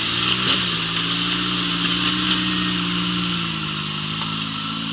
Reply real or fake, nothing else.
real